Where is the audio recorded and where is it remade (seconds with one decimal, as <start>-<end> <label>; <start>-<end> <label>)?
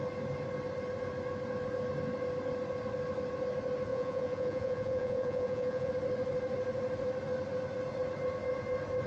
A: 0.0-3.9 recorded; 3.9-5.9 remade; 5.9-9.1 recorded